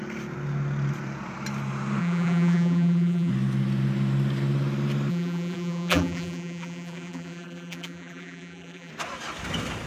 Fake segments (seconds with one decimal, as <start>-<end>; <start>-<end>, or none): 2.0-3.3; 5.1-8.9